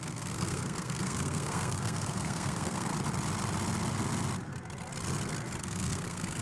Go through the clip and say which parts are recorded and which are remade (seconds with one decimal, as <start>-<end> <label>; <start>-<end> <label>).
0.0-2.9 remade; 2.9-5.6 recorded; 5.6-6.4 remade